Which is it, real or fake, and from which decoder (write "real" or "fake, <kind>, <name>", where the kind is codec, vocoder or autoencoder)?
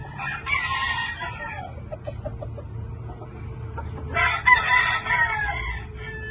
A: real